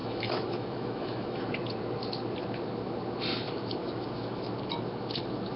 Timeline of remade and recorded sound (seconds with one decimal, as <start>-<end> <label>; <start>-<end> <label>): 0.0-1.5 remade; 1.5-3.8 recorded; 3.8-4.4 remade; 4.4-5.6 recorded